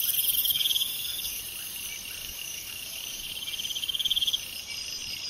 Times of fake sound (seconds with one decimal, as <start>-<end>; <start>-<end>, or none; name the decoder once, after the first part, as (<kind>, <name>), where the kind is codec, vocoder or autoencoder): 0.4-1.4 (codec, DAC); 2.2-3.3; 3.8-4.3